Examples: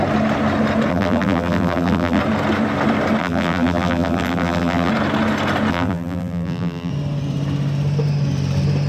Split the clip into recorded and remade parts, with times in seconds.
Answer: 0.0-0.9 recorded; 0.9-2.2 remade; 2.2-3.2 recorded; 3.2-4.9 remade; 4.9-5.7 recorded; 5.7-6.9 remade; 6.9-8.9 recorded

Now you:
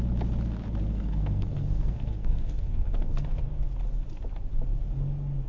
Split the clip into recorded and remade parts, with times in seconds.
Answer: 0.0-0.8 recorded; 0.8-3.4 remade; 3.4-5.5 recorded

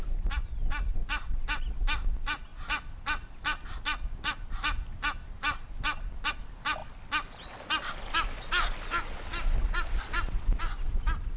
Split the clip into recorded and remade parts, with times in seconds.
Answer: 0.0-11.4 recorded

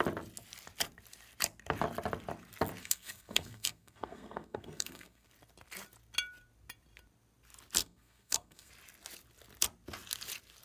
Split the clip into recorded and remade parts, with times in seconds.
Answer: 0.0-2.8 recorded; 2.8-5.3 remade; 5.3-7.8 recorded; 7.8-8.7 remade; 8.7-10.6 recorded

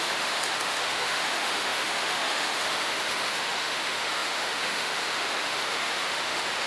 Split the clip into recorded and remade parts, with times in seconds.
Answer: 0.0-6.7 remade

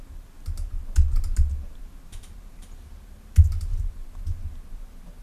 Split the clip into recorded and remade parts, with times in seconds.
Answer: 0.0-5.2 recorded